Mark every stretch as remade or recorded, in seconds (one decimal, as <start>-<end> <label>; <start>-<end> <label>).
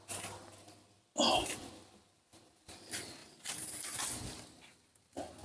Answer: 0.0-3.2 recorded; 3.2-4.4 remade; 4.4-5.4 recorded